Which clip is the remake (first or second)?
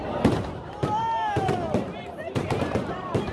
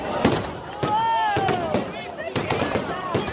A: first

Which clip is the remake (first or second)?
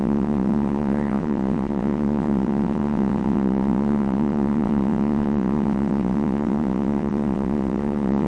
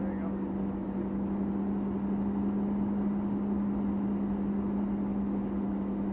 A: first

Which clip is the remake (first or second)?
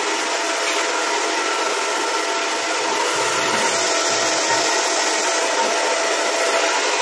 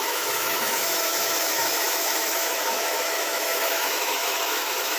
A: second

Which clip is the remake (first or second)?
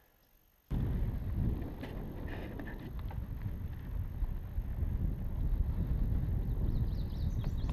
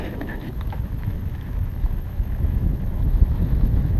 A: second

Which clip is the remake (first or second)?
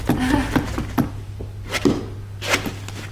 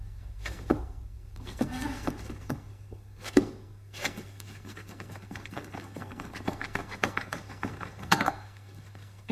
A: second